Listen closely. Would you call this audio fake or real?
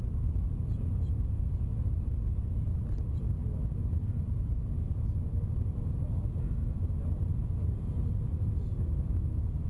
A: real